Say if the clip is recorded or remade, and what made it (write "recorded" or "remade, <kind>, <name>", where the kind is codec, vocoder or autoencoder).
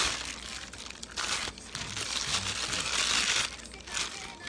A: recorded